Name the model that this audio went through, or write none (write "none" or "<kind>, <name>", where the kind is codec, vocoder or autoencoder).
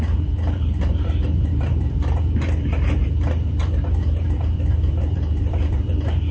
vocoder, BigVGAN v2